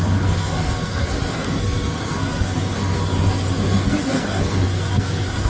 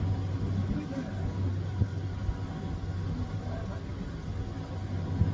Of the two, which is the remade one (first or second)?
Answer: first